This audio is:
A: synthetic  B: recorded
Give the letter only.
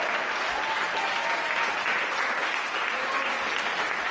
B